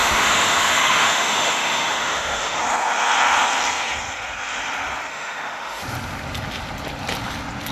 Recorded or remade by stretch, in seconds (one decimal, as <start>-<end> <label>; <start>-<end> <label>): 0.0-2.6 remade; 2.6-5.1 recorded; 5.1-5.8 remade; 5.8-7.7 recorded

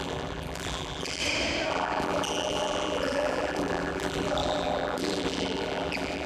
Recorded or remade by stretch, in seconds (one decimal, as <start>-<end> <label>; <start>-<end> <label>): 0.0-1.2 remade; 1.2-1.7 recorded; 1.7-6.3 remade